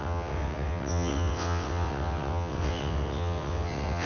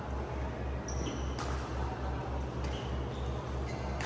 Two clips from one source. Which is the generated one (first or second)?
first